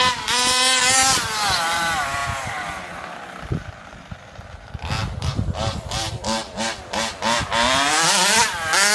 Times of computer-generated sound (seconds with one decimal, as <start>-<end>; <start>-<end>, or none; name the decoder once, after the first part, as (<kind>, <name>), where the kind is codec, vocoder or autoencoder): 5.3-6.1 (vocoder, BigVGAN v2)